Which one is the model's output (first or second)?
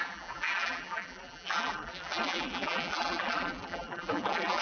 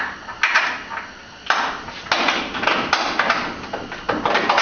first